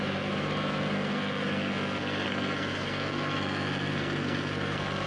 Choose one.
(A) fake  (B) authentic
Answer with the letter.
A